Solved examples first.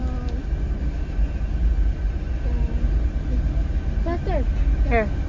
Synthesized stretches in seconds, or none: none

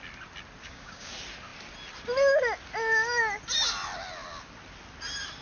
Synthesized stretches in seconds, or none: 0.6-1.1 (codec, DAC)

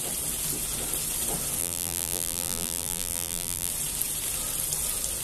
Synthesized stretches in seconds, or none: 1.6-3.7 (vocoder, BigVGAN v2)

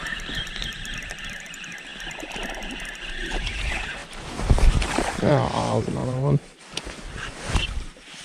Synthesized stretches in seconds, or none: 0.0-1.9 (vocoder, BigVGAN v2); 3.1-8.2

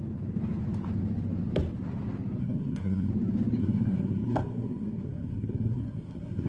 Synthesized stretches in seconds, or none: 2.4-3.1 (codec, SNAC); 3.6-6.5

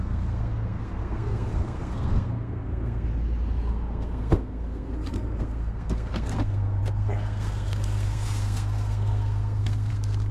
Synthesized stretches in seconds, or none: 0.0-3.1 (codec, SNAC); 3.7-10.3

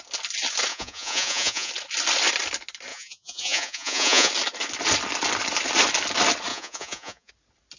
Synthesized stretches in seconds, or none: 0.7-1.7 (vocoder, Vocos); 2.9-4.3; 6.5-7.3